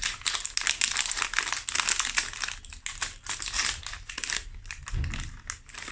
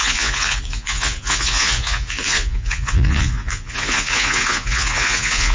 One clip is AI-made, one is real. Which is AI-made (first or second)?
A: second